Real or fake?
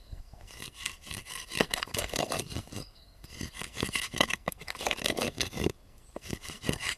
fake